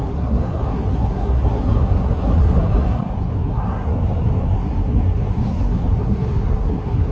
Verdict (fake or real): fake